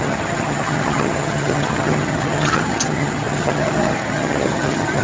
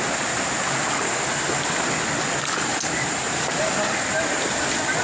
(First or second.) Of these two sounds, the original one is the second